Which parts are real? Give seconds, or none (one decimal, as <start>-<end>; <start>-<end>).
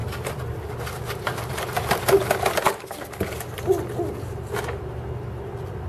0.0-5.9